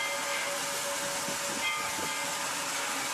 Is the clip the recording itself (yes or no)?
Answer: yes